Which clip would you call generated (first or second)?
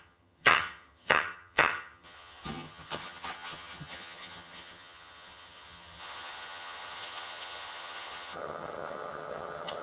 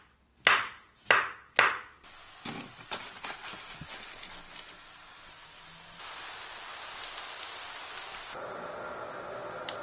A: first